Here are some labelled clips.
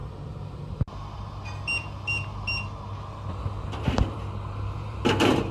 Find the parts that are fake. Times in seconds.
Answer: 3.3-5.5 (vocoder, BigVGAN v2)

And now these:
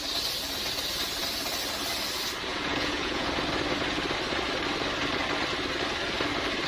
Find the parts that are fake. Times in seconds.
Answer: 2.5-3.3 (vocoder, Vocos)